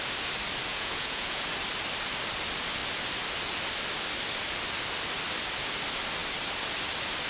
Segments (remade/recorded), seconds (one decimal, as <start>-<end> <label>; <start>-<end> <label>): 0.0-0.7 recorded; 0.7-1.4 remade; 1.4-7.3 recorded